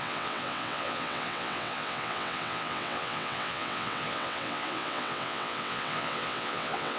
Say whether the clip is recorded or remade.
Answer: remade